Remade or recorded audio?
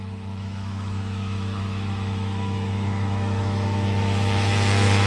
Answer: remade